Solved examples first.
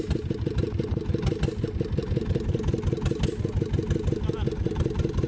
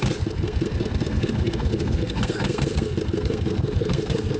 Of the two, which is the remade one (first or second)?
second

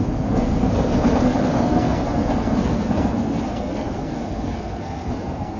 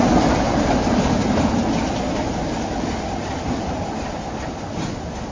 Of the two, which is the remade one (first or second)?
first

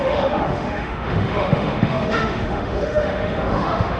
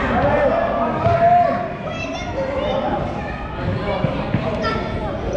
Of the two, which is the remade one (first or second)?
first